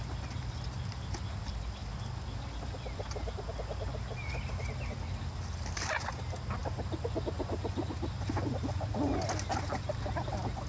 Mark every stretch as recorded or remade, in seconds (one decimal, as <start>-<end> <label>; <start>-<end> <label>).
0.0-10.7 recorded